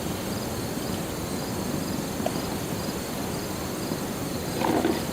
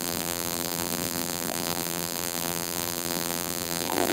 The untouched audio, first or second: first